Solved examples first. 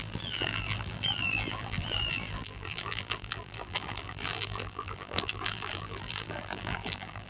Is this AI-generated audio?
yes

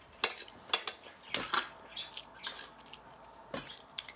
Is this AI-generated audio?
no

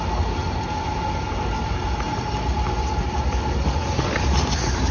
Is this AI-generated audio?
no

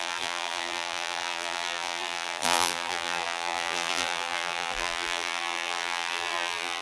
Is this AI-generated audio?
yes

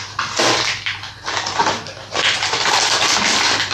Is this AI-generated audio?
yes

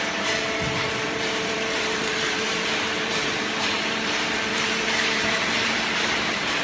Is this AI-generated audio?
yes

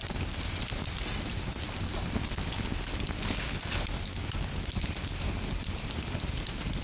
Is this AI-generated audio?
no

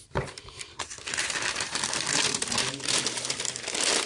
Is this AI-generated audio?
yes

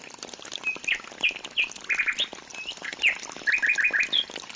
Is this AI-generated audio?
no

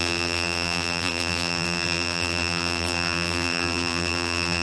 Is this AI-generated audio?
yes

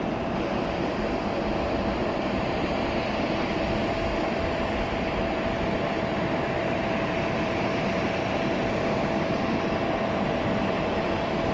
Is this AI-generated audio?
yes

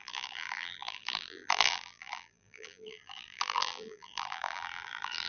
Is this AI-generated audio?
yes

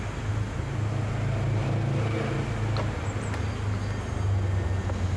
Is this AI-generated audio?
no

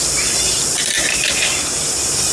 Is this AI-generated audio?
no